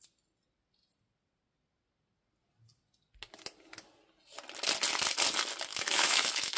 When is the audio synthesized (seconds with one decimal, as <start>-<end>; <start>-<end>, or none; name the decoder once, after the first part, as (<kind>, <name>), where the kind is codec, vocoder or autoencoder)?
5.7-6.6 (autoencoder, DAC-VAE)